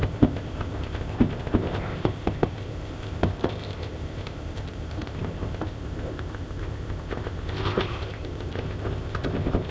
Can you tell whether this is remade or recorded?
remade